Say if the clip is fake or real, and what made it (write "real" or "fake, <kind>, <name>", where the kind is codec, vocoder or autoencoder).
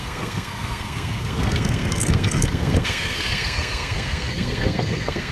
fake, codec, SNAC